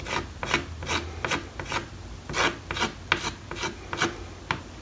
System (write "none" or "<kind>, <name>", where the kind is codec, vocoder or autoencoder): none